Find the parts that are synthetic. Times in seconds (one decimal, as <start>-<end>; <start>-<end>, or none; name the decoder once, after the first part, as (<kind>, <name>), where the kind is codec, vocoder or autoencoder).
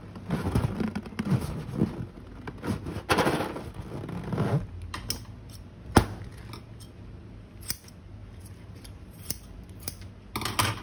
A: 8.2-10.1 (vocoder, BigVGAN v2)